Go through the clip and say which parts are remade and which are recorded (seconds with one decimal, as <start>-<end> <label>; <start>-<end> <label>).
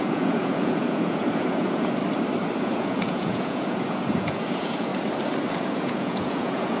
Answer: 0.0-2.0 remade; 2.0-2.6 recorded; 2.6-4.9 remade; 4.9-5.6 recorded; 5.6-6.8 remade